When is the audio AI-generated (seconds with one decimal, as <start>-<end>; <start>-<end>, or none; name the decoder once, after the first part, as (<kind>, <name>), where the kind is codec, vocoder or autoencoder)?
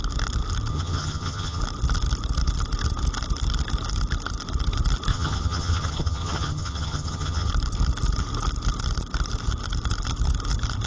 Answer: 0.7-1.6 (vocoder, HiFi-GAN); 5.1-7.5